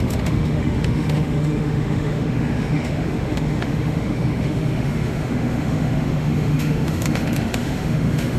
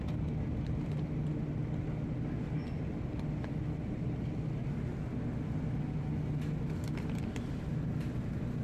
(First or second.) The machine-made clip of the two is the first